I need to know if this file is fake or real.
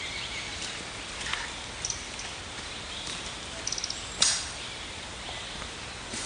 real